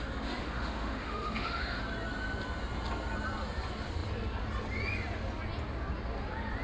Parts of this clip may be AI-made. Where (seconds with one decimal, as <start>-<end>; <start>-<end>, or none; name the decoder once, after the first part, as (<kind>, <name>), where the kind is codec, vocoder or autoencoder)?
0.4-1.8 (autoencoder, DAC-VAE)